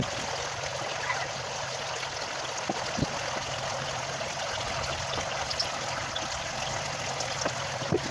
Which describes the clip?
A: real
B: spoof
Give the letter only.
A